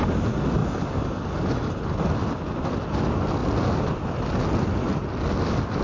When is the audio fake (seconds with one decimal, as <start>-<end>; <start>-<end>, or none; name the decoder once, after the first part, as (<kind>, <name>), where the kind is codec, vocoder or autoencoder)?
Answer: none